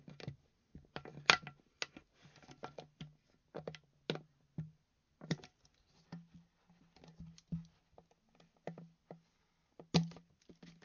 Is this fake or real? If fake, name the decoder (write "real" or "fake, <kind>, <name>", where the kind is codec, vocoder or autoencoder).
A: real